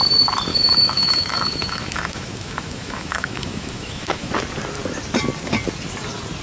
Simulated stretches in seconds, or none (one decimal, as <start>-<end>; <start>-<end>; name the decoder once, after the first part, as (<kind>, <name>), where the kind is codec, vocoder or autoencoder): 0.5-4.3 (autoencoder, DAC-VAE)